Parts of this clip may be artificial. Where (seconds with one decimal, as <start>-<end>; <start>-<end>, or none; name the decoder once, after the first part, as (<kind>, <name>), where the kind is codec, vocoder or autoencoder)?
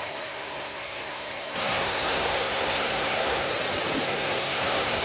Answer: 0.0-3.5 (codec, SNAC); 4.0-5.0